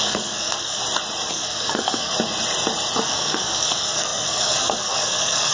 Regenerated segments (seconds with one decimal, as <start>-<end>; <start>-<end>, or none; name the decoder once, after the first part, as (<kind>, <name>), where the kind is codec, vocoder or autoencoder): 0.0-0.8 (codec, SNAC); 1.3-2.1; 3.0-5.5